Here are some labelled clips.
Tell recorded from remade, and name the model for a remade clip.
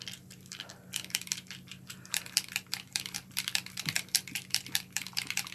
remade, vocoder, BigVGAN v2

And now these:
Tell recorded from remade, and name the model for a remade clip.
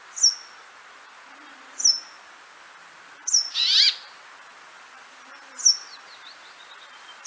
recorded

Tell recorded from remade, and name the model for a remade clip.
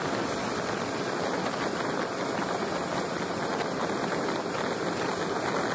recorded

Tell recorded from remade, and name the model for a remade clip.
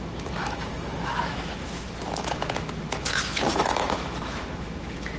remade, autoencoder, DAC-VAE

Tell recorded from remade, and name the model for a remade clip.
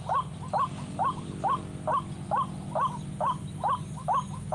recorded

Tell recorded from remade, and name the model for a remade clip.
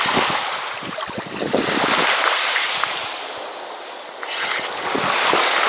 recorded